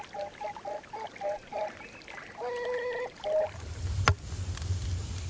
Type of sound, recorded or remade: recorded